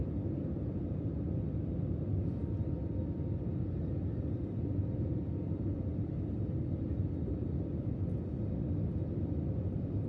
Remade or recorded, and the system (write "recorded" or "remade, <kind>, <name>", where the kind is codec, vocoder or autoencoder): recorded